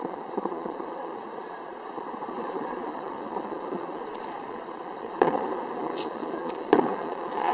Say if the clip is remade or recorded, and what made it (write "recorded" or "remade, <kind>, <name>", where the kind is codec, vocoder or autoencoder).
remade, vocoder, Vocos